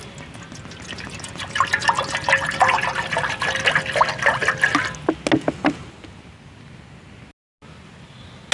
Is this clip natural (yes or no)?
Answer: yes